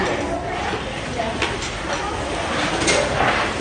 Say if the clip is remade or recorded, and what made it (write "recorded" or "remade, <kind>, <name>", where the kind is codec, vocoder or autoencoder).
recorded